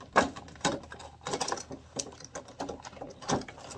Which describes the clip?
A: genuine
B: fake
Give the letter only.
A